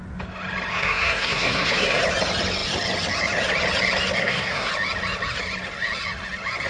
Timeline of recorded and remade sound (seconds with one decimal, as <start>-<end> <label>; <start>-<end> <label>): 0.0-0.7 recorded; 0.7-2.0 remade; 2.0-4.2 recorded; 4.2-4.7 remade; 4.7-6.7 recorded